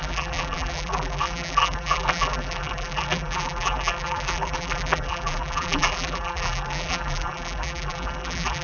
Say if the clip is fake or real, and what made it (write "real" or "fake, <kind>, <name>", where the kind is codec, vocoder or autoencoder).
fake, vocoder, BigVGAN v2